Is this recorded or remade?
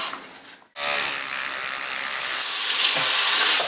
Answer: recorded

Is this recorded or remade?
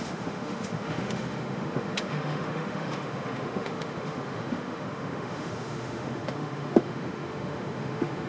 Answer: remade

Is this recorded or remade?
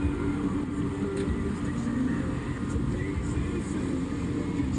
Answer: recorded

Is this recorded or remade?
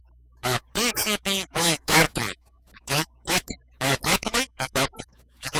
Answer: remade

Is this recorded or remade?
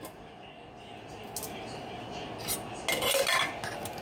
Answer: recorded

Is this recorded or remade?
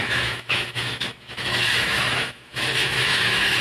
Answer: remade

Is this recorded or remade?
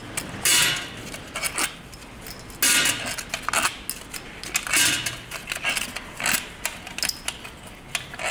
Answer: recorded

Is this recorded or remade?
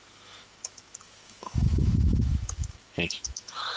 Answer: remade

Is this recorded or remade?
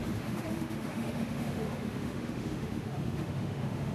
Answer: remade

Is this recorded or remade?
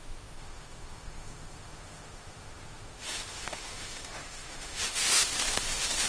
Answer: remade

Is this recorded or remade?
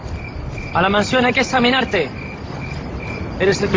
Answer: recorded